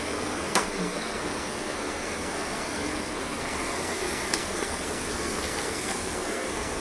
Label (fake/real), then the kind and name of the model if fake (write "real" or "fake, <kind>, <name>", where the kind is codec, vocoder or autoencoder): fake, codec, SNAC